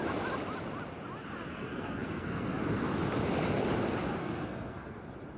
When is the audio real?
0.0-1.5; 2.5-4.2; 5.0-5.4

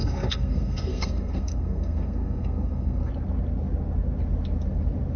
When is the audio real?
3.1-5.2

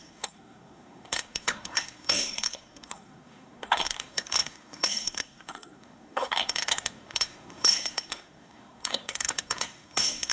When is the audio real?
none

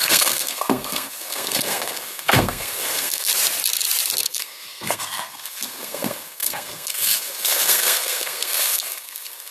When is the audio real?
3.3-4.2

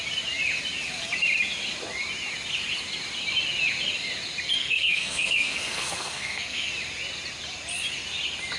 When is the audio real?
0.0-4.6; 6.7-8.6